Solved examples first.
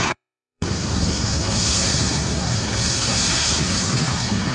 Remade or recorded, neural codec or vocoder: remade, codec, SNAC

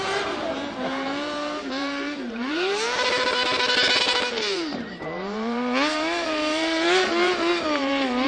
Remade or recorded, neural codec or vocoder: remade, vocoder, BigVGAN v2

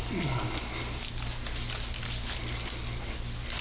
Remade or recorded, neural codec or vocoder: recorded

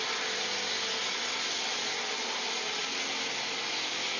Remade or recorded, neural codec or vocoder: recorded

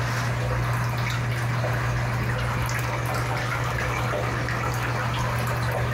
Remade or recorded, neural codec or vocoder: recorded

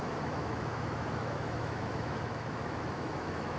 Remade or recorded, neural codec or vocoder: remade, autoencoder, DAC-VAE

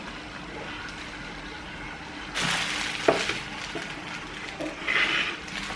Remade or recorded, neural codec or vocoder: recorded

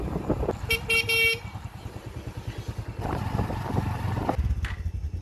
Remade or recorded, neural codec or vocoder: recorded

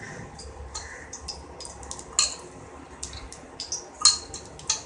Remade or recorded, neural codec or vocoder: recorded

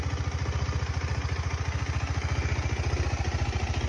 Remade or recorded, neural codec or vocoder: recorded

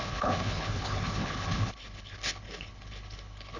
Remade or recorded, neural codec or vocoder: remade, codec, HILCodec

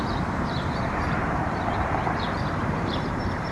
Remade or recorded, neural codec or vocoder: remade, vocoder, BigVGAN v2